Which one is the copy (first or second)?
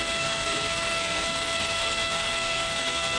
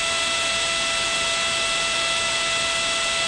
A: first